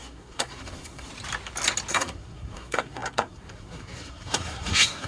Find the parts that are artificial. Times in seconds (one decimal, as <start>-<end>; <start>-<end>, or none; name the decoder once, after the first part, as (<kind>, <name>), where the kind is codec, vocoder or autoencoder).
0.0-1.1 (codec, SNAC); 1.9-5.1